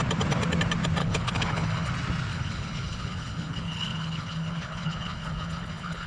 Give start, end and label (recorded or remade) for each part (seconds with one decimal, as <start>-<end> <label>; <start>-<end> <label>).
0.0-1.0 recorded; 1.0-1.9 remade; 1.9-2.3 recorded; 2.3-6.1 remade